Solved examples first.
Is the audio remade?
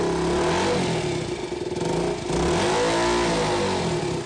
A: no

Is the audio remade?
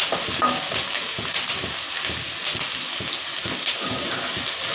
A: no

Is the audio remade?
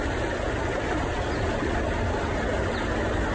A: no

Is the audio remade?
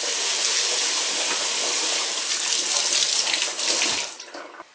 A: no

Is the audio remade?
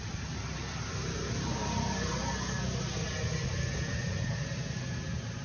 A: no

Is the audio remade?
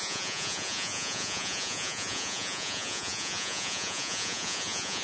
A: yes